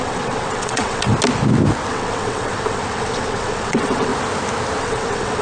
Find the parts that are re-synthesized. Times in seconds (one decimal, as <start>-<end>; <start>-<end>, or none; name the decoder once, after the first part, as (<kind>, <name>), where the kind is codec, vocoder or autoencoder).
0.0-1.1 (vocoder, WaveNeXt); 1.9-4.1; 4.8-5.4